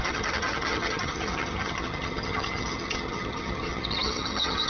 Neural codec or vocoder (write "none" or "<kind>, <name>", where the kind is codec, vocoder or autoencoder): vocoder, HiFi-GAN